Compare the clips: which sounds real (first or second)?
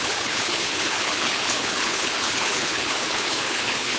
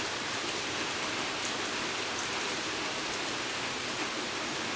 second